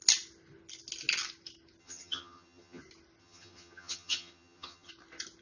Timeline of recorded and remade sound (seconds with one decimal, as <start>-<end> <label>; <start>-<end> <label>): 0.0-1.8 recorded; 1.8-2.8 remade; 2.8-3.2 recorded; 3.2-4.9 remade; 4.9-5.4 recorded